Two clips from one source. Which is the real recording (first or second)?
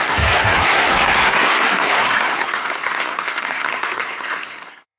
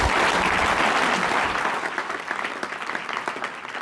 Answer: second